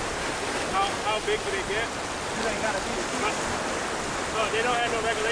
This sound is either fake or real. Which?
real